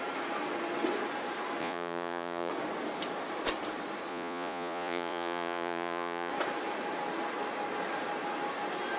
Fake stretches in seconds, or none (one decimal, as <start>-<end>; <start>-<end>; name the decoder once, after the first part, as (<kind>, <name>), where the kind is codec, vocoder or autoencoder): 1.6-2.5 (vocoder, Vocos); 4.1-6.3

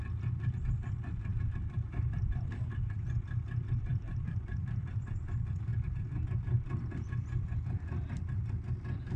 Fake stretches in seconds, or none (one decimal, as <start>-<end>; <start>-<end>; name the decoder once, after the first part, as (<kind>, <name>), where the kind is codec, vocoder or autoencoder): 1.3-2.3 (vocoder, BigVGAN v2); 3.9-5.0

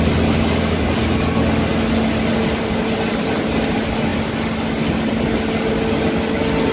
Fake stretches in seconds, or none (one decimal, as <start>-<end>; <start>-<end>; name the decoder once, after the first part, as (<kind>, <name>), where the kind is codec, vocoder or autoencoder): none

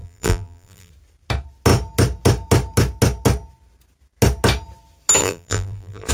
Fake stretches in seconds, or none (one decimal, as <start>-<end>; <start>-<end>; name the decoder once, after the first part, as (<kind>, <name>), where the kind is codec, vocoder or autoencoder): 0.0-0.9 (vocoder, BigVGAN v2); 5.2-6.1